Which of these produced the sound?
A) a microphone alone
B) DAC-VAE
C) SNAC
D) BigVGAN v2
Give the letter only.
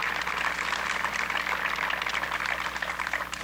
A